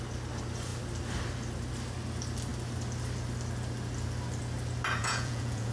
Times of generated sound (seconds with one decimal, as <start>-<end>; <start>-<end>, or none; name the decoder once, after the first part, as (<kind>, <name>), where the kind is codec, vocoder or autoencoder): 5.0-5.7 (vocoder, Vocos)